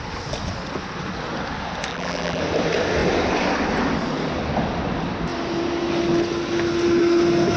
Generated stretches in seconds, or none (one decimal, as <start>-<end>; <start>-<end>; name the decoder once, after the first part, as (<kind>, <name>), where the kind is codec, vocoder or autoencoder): 1.9-2.4 (vocoder, BigVGAN v2)